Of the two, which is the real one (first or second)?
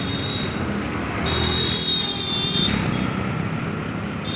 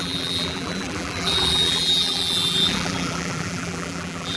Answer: first